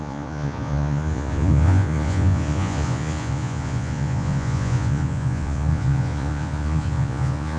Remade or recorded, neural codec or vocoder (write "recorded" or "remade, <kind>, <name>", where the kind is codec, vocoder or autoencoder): remade, vocoder, Vocos